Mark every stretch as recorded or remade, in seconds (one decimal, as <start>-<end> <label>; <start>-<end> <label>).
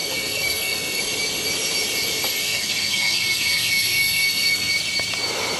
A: 0.0-1.0 remade; 1.0-2.4 recorded; 2.4-4.7 remade; 4.7-5.6 recorded